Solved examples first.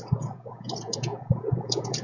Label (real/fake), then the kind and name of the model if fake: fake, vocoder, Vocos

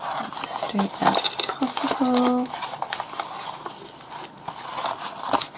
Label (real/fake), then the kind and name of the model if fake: real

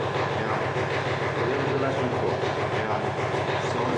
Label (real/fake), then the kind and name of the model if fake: real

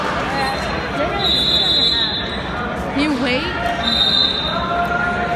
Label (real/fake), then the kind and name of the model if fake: real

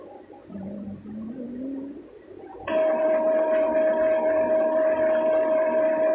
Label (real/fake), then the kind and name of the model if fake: real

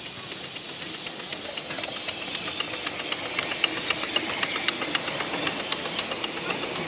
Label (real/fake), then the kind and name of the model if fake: real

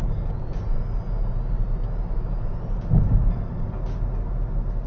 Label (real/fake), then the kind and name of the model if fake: real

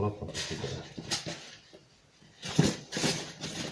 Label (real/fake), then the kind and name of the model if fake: real